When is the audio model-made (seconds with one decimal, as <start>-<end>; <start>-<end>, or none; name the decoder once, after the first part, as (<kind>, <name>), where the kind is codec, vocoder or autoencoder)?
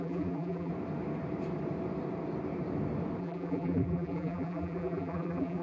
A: 0.0-0.7 (vocoder, BigVGAN v2); 3.2-5.6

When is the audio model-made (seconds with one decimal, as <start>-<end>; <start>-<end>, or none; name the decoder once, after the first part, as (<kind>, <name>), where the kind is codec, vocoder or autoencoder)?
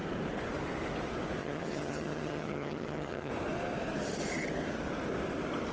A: 1.4-3.3 (vocoder, HiFi-GAN)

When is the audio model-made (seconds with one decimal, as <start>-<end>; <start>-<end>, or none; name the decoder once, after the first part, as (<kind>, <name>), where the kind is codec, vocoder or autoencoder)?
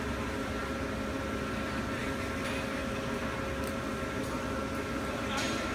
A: none